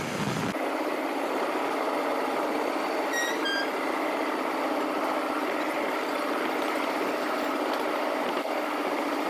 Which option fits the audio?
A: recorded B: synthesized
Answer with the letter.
A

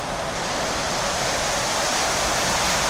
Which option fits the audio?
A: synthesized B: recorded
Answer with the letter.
A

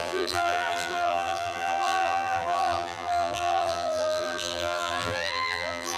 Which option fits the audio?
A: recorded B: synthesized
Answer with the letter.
B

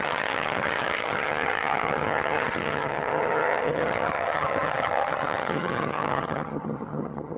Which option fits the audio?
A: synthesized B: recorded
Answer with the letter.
A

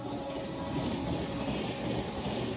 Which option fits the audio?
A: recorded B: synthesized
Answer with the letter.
A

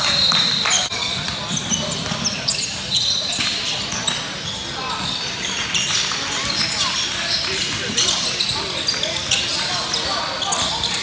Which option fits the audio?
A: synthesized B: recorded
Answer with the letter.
B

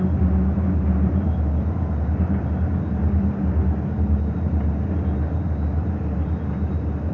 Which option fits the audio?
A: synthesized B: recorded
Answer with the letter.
B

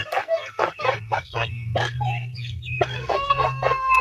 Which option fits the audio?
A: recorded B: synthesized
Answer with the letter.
B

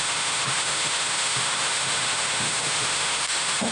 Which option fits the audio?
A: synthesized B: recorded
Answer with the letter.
A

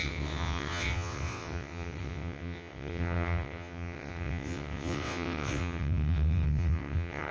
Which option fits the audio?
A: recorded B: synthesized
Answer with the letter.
B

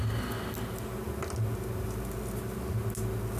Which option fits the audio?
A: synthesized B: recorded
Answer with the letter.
B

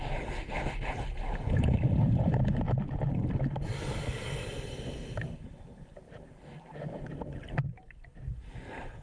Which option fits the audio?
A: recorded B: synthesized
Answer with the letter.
A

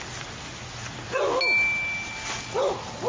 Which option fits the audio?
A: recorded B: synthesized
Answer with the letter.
A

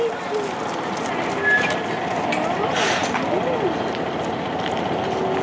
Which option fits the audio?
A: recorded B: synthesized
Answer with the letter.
A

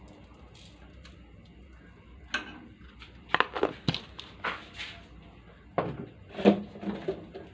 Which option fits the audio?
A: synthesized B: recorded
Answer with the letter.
B